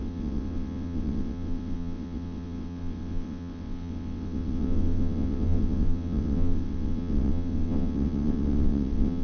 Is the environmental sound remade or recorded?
remade